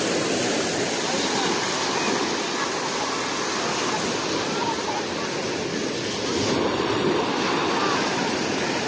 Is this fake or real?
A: real